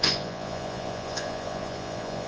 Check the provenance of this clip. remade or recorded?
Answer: remade